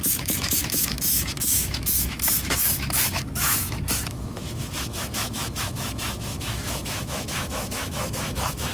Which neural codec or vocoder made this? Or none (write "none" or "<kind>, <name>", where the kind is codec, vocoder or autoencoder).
autoencoder, DAC-VAE